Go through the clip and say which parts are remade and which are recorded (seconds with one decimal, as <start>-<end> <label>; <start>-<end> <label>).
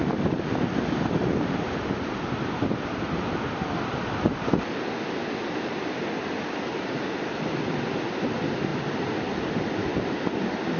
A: 0.0-10.8 recorded